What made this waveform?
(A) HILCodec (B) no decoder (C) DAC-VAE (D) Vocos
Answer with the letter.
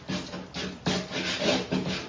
B